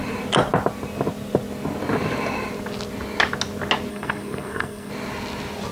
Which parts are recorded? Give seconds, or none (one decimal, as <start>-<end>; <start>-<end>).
0.0-3.9; 4.9-5.7